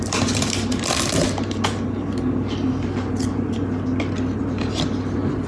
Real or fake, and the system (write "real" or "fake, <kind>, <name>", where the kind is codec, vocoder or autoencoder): real